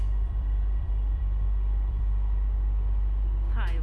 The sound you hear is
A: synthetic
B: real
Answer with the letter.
A